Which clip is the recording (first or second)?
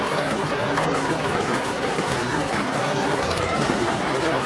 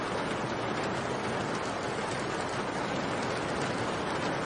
second